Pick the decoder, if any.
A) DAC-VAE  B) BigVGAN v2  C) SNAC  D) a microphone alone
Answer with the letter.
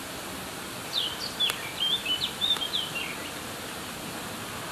D